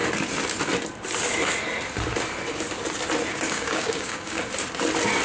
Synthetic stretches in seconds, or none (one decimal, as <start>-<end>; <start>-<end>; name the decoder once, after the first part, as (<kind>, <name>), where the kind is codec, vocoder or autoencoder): 3.3-4.5 (codec, DAC)